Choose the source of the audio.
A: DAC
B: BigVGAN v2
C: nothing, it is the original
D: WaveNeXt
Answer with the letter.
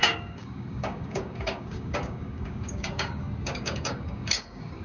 A